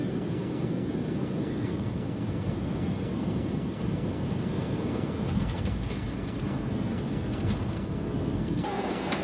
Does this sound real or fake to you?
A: fake